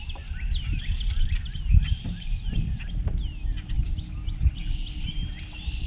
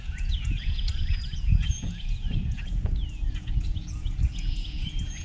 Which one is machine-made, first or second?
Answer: second